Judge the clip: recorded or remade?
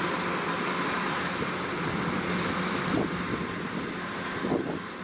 remade